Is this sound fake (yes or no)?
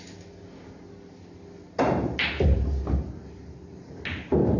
no